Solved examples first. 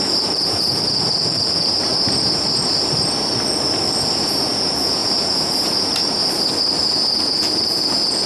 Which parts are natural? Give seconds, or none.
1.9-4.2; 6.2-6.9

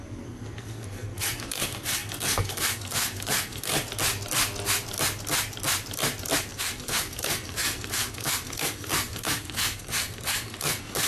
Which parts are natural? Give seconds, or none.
3.7-6.5

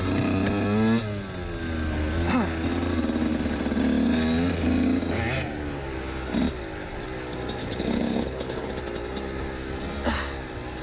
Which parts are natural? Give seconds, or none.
0.0-7.6; 8.7-10.8

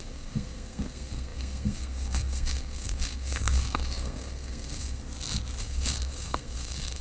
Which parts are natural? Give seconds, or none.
5.0-5.6